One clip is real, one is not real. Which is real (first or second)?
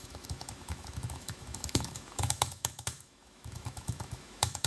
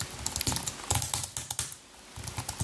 second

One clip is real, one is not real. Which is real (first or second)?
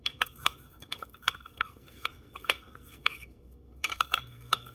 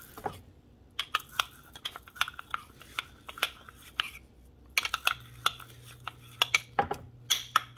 second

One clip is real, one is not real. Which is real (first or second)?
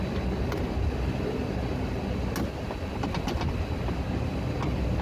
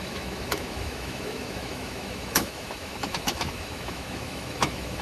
first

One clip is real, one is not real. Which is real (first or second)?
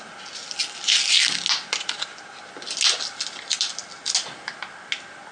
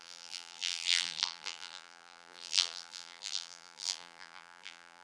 first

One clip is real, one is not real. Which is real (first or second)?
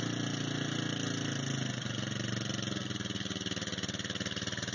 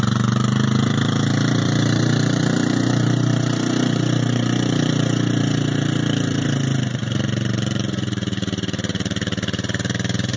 first